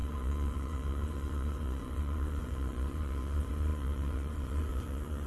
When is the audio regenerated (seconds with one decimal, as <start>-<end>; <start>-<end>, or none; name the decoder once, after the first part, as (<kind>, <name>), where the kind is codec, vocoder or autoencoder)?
0.0-5.3 (vocoder, Vocos)